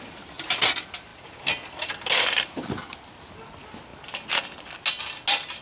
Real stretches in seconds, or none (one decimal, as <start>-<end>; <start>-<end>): 0.0-5.6